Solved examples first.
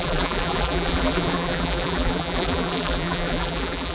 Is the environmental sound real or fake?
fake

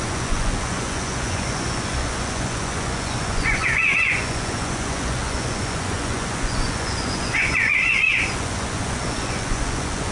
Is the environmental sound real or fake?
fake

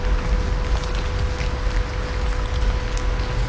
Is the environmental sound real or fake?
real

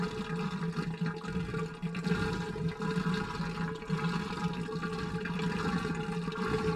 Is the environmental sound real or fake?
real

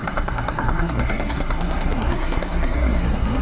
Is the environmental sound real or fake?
fake